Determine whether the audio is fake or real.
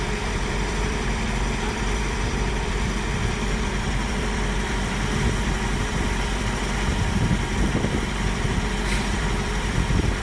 fake